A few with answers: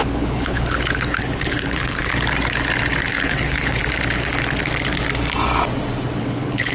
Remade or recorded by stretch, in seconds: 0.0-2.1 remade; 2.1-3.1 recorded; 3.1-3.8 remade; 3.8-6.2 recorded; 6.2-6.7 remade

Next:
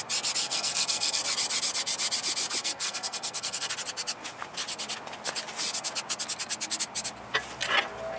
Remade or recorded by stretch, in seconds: 0.0-0.4 recorded; 0.4-1.2 remade; 1.2-2.6 recorded; 2.6-3.7 remade; 3.7-8.2 recorded

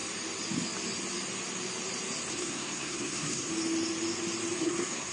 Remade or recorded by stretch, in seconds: 0.0-2.3 recorded; 2.3-3.5 remade; 3.5-4.6 recorded; 4.6-5.1 remade

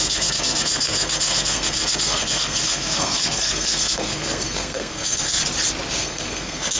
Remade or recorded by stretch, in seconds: 0.0-5.4 remade; 5.4-6.0 recorded; 6.0-6.8 remade

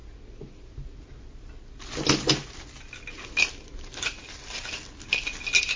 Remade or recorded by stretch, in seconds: 0.0-5.8 recorded

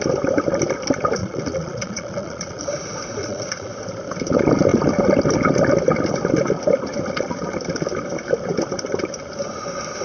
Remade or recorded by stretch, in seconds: 0.0-1.2 recorded; 1.2-2.6 remade; 2.6-3.2 recorded; 3.2-3.7 remade; 3.7-10.0 recorded